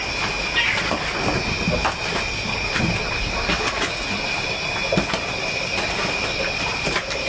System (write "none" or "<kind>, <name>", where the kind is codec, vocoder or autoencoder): none